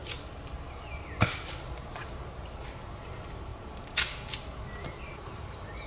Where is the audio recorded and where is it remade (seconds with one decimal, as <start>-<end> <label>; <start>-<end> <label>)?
0.0-5.9 recorded